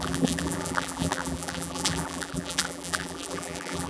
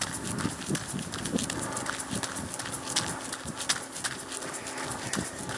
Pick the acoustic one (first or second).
second